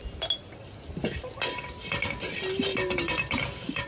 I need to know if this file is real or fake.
real